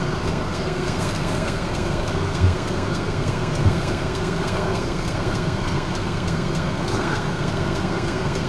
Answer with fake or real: fake